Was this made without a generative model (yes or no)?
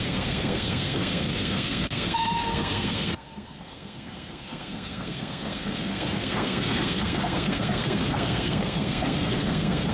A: no